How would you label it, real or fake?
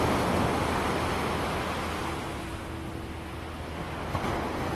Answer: real